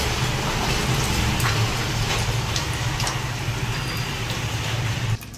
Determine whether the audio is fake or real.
real